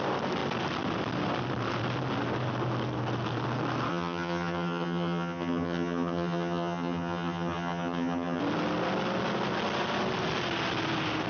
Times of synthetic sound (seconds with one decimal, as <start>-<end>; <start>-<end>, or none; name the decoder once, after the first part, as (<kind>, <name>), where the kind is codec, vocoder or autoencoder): 3.9-8.4 (vocoder, HiFi-GAN)